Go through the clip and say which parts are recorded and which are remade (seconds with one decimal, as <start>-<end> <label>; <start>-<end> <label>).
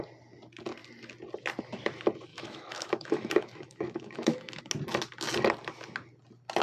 0.0-2.3 recorded; 2.3-4.6 remade; 4.6-6.6 recorded